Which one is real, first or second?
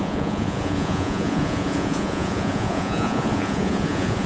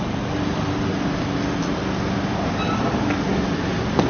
second